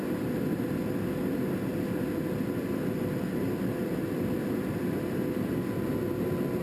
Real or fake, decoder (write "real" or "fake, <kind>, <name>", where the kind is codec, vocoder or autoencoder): real